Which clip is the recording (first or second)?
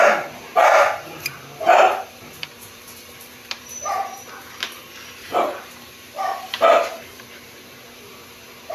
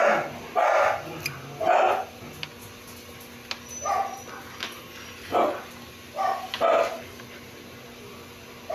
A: second